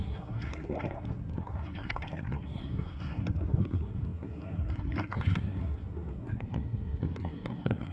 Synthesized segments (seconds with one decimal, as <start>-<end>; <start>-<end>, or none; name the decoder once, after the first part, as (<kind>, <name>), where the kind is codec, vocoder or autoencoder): 0.0-7.9 (codec, SNAC)